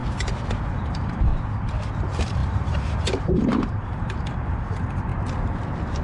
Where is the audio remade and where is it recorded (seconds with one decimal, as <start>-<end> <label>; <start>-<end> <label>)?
0.0-0.7 recorded; 0.7-1.3 remade; 1.3-2.0 recorded; 2.0-5.1 remade; 5.1-6.0 recorded